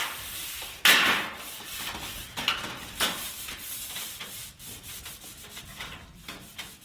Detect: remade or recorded recorded